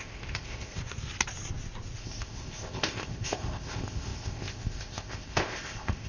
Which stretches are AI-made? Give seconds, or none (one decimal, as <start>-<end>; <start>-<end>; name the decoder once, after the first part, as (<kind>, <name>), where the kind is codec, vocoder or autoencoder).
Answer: 0.0-0.8 (codec, ZipCodec); 2.0-6.1